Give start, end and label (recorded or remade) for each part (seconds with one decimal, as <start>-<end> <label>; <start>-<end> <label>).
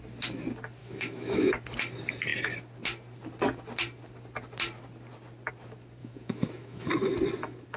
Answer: 0.0-0.8 recorded; 0.8-1.5 remade; 1.5-6.0 recorded; 6.0-6.9 remade; 6.9-7.8 recorded